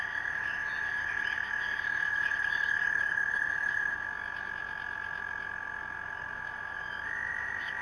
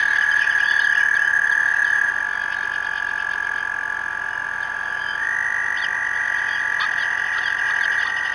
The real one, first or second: second